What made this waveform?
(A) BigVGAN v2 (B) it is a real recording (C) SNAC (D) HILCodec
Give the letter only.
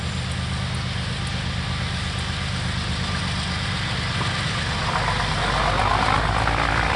B